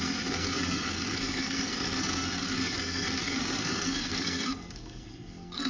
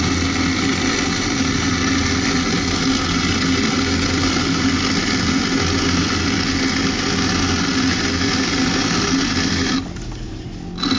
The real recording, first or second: second